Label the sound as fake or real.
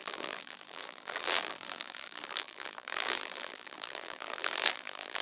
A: fake